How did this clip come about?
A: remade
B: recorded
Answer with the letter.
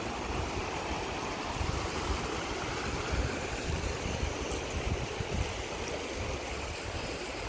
A